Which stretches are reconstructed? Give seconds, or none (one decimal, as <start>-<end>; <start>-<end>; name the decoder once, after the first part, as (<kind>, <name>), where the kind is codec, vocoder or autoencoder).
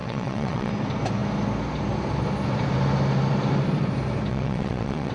0.0-0.7 (vocoder, WaveNeXt); 4.3-5.1